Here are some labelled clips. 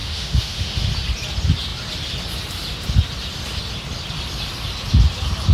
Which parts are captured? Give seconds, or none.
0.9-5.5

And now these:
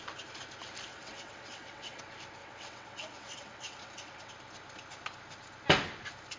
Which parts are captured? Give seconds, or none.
0.0-0.9; 2.0-2.4; 4.3-6.4

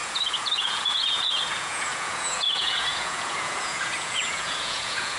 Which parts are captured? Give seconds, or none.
none

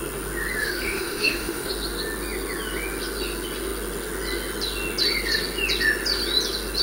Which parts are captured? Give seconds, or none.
0.0-0.6; 1.7-6.8

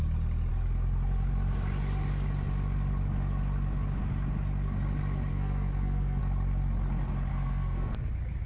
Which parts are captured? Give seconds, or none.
0.0-5.3; 6.2-7.3; 8.1-8.5

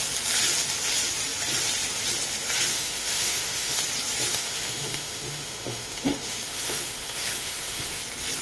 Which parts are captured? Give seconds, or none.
0.0-2.7; 3.8-4.3; 8.0-8.4